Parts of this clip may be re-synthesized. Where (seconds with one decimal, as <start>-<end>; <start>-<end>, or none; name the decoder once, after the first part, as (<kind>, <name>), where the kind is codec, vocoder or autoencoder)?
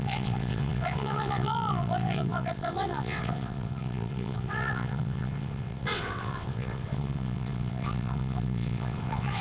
0.0-9.4 (vocoder, WaveNeXt)